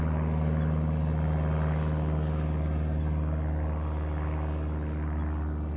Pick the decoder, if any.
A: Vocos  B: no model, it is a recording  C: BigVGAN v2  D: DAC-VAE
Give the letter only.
B